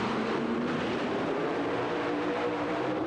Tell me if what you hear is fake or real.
fake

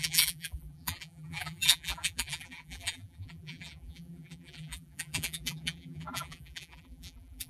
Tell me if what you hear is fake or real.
fake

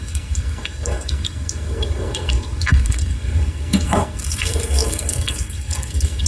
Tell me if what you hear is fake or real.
fake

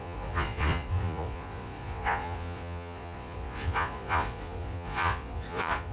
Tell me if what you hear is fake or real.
fake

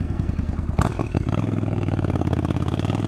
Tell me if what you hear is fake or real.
fake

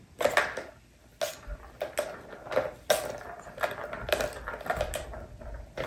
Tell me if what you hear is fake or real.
real